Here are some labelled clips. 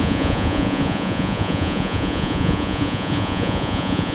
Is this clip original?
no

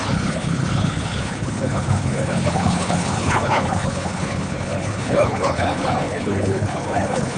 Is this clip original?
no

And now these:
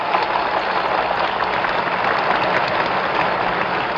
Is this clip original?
yes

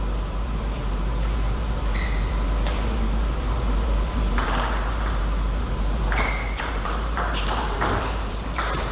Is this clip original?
no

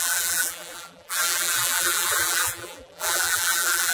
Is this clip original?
no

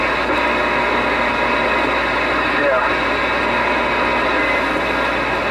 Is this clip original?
yes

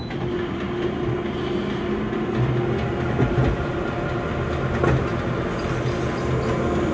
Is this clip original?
yes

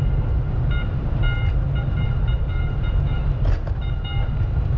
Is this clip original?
yes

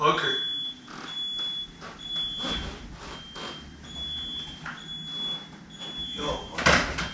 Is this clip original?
yes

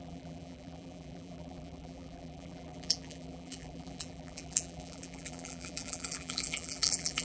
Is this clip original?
no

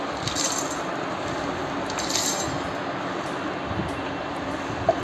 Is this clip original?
yes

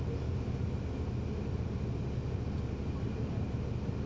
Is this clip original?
yes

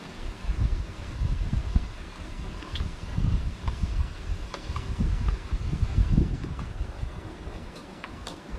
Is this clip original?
no